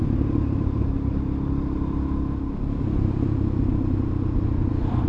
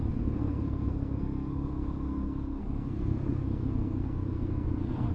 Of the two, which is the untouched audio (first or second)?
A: first